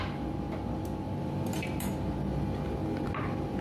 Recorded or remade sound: recorded